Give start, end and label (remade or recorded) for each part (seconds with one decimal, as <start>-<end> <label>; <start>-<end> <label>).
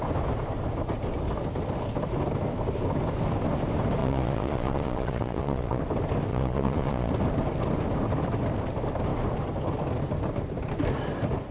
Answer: 0.0-4.0 recorded; 4.0-5.8 remade; 5.8-6.3 recorded; 6.3-7.1 remade; 7.1-11.5 recorded